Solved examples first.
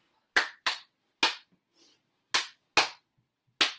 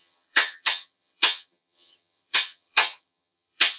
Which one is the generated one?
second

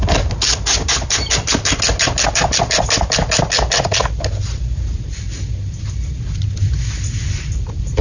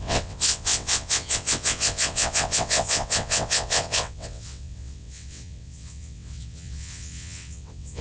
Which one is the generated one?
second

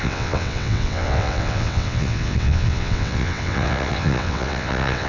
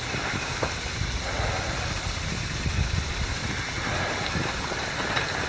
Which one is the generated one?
first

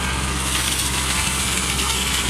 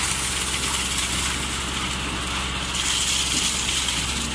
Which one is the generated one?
first